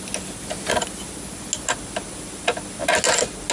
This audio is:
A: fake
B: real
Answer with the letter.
B